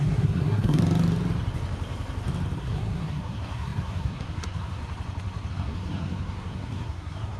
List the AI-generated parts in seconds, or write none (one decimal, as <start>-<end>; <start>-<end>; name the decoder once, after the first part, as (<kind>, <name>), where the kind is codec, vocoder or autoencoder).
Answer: 0.0-0.8 (codec, SNAC); 2.6-4.8; 5.5-7.4